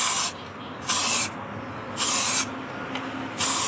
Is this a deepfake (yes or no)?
no